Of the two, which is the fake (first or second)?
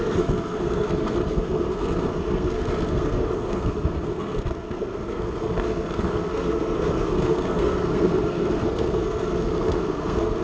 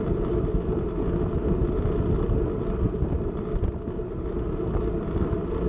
first